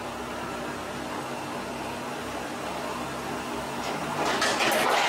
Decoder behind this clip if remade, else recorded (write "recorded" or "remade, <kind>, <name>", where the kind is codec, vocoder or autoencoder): recorded